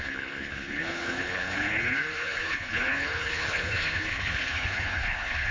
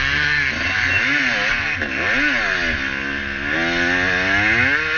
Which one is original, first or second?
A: second